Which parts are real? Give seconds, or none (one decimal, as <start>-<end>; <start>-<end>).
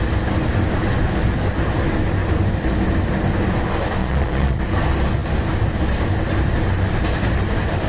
0.0-4.0; 4.6-7.9